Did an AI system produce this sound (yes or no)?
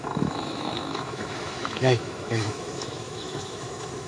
yes